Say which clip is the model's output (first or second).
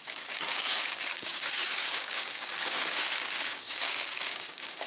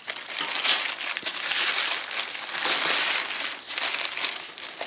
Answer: first